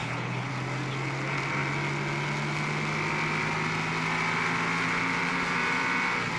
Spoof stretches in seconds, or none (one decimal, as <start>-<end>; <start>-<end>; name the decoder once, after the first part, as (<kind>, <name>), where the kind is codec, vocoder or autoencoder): 0.0-0.5 (codec, HILCodec)